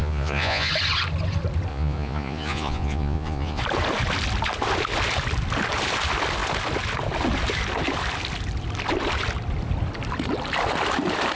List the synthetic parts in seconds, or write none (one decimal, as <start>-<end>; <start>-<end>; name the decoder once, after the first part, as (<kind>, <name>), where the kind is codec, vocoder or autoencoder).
0.0-0.7 (vocoder, Vocos); 1.7-3.6